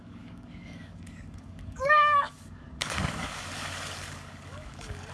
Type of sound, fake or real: fake